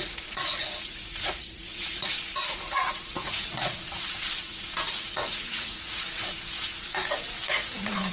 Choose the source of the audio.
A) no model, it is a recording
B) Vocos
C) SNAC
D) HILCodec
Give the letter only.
B